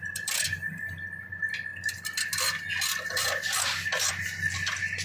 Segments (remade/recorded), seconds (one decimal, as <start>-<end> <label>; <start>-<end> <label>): 0.0-5.0 recorded